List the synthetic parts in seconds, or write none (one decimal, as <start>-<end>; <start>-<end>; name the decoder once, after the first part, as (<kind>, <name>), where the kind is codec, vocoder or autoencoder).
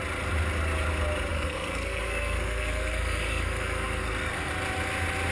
1.3-4.5 (codec, SNAC)